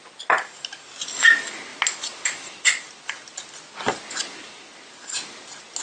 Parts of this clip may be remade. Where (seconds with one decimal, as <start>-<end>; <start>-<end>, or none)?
none

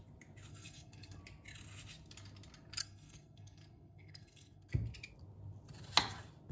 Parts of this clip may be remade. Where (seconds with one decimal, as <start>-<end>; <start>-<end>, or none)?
0.5-1.2; 2.8-4.7

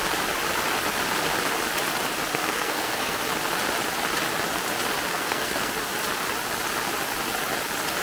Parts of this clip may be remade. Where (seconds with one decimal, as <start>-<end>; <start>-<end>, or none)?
2.3-3.2; 5.1-5.7

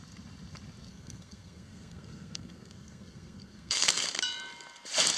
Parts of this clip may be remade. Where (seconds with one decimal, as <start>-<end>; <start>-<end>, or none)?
0.9-4.0

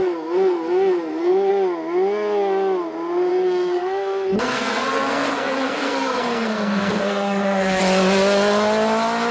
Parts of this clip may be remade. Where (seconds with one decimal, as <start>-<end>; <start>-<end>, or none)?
0.0-1.5; 3.3-7.8